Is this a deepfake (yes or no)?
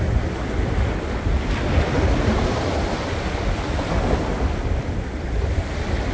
no